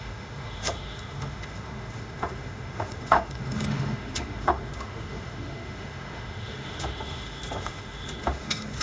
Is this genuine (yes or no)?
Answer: no